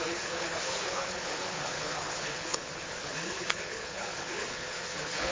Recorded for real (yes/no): no